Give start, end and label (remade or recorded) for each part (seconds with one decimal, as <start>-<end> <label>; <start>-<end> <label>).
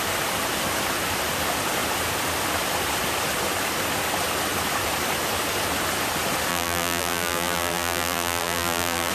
0.0-6.5 recorded; 6.5-9.1 remade